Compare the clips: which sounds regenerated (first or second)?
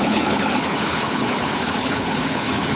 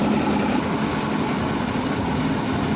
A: first